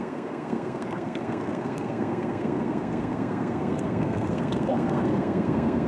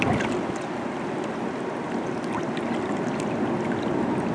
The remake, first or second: first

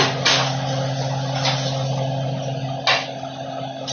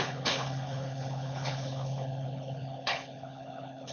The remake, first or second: second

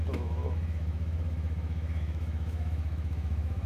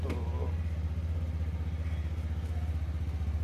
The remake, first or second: first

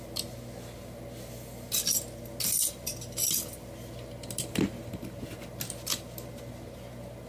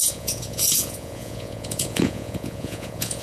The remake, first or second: second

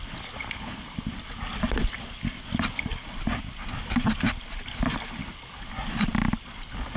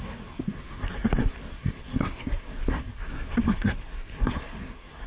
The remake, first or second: second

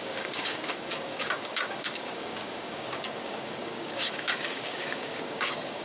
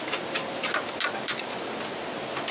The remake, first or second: first